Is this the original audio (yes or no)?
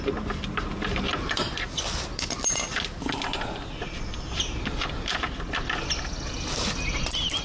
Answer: yes